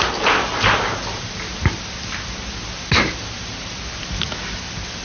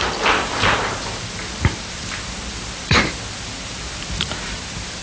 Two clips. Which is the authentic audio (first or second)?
first